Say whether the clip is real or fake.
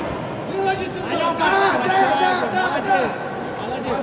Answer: real